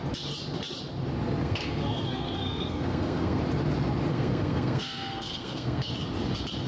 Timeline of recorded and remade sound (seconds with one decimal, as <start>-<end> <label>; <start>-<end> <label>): 0.0-1.4 recorded; 1.4-3.4 remade; 3.4-4.1 recorded; 4.1-5.9 remade; 5.9-6.7 recorded